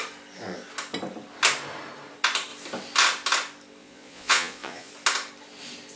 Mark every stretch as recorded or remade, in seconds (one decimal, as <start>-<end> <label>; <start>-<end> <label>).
0.0-3.8 recorded; 3.8-4.9 remade; 4.9-6.0 recorded